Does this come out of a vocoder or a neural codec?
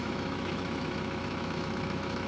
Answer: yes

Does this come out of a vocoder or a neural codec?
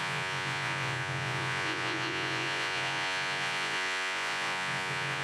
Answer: yes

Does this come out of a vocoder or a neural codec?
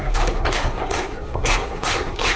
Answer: yes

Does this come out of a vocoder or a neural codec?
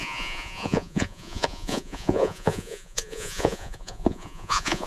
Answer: yes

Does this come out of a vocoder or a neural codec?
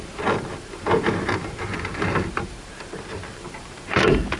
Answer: yes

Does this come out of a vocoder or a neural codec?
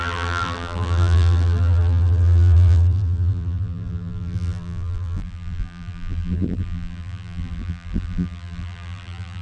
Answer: yes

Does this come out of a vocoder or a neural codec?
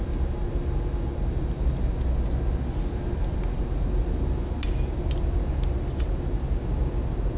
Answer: no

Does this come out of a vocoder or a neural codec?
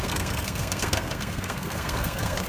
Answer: yes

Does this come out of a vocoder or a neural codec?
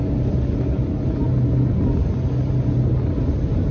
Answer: no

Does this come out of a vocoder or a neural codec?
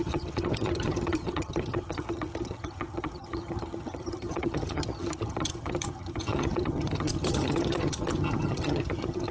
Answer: yes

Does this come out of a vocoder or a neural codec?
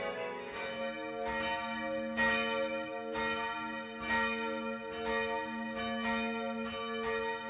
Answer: no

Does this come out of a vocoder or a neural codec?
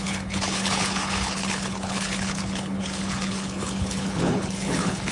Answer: yes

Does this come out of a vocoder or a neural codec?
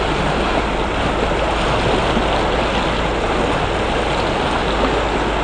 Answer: no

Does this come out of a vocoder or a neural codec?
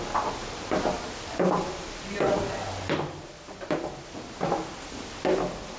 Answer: no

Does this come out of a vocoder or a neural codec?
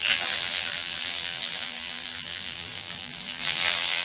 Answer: yes